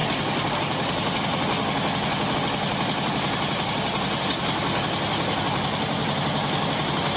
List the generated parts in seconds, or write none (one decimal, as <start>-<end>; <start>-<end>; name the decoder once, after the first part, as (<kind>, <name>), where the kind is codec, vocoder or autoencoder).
none